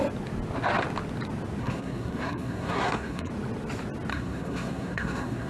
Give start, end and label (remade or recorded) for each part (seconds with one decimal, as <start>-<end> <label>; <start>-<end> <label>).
0.0-1.6 recorded; 1.6-3.3 remade; 3.3-4.1 recorded; 4.1-5.5 remade